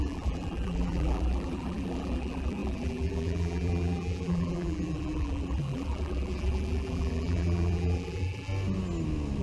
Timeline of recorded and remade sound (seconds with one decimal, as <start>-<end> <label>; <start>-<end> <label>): 0.0-8.5 remade; 8.5-9.4 recorded